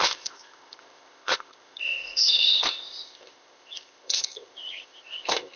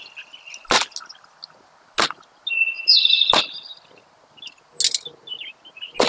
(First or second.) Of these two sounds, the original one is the second